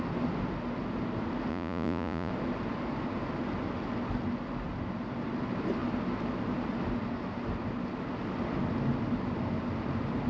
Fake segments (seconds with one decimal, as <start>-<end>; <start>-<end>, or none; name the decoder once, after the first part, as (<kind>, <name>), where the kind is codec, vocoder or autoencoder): 1.5-2.3 (vocoder, Vocos)